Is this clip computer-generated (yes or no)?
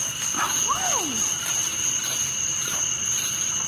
no